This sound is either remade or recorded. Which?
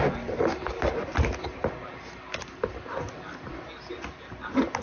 recorded